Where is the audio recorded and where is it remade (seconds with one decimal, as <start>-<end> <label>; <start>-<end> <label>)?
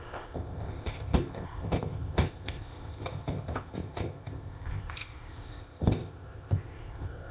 0.0-7.3 remade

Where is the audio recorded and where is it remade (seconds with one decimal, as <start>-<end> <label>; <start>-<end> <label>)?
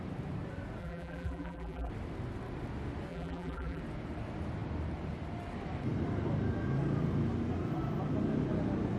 0.0-0.8 recorded; 0.8-1.9 remade; 1.9-3.1 recorded; 3.1-3.8 remade; 3.8-9.0 recorded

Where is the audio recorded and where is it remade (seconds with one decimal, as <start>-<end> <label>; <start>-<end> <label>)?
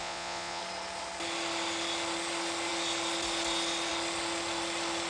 0.0-0.6 remade; 0.6-5.1 recorded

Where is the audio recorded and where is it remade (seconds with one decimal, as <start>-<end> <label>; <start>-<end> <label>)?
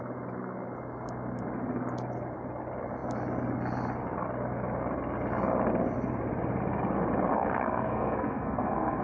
0.0-7.3 recorded; 7.3-9.0 remade